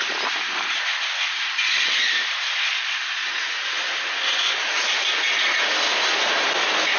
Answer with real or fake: real